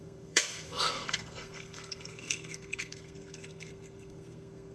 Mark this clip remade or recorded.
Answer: remade